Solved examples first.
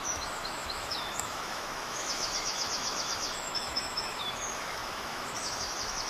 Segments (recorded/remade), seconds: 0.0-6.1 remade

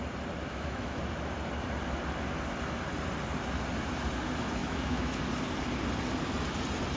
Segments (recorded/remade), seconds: 0.0-0.4 recorded; 0.4-1.0 remade; 1.0-4.6 recorded; 4.6-5.2 remade; 5.2-7.0 recorded

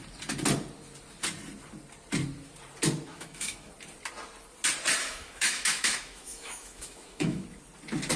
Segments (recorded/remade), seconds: 0.0-3.1 recorded; 3.1-3.7 remade; 3.7-5.0 recorded; 5.0-7.4 remade; 7.4-8.2 recorded

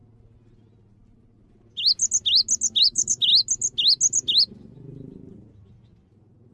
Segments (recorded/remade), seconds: 0.0-2.8 recorded; 2.8-3.3 remade; 3.3-6.5 recorded

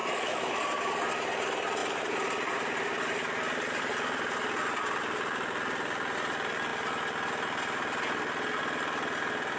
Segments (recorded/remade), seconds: 0.0-0.6 remade; 0.6-9.6 recorded